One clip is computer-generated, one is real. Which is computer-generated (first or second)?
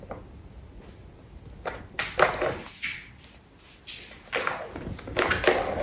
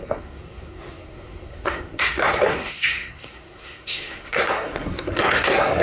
second